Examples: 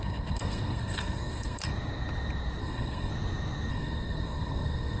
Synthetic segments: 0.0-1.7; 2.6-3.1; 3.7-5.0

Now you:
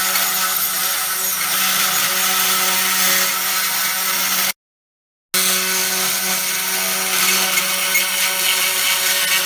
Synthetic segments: none

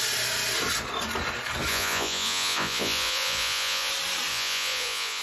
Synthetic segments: 1.7-3.9; 4.3-5.2

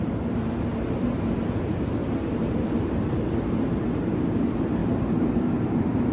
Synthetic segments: 2.0-4.1; 4.8-5.6

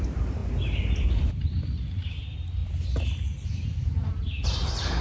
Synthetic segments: 0.0-0.4; 1.3-2.6; 3.7-5.0

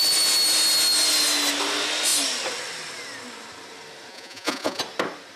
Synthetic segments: 4.1-4.8

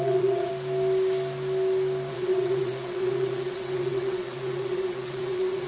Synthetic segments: 0.0-0.5; 2.1-5.7

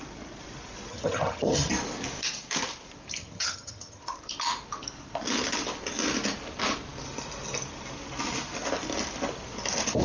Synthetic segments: 0.9-1.7; 3.2-4.0